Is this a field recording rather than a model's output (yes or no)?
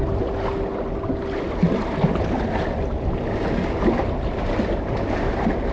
yes